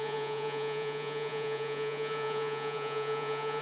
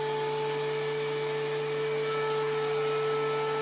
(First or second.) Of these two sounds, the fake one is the first